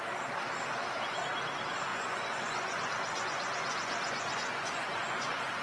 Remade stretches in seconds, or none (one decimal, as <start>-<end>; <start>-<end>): 1.9-5.6